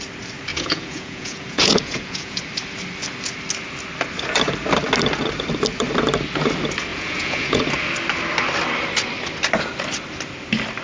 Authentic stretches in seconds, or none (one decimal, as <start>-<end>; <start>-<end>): 0.0-0.5; 2.4-6.9; 7.6-10.8